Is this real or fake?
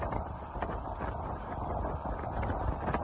real